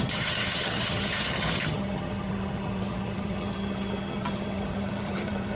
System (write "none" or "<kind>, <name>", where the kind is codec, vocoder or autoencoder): vocoder, HiFi-GAN